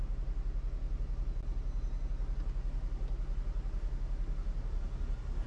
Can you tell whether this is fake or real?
real